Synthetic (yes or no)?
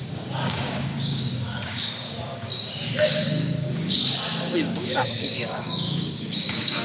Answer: yes